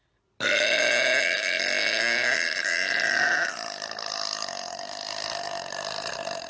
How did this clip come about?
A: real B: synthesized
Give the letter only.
A